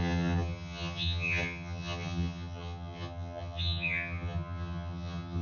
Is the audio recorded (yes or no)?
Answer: no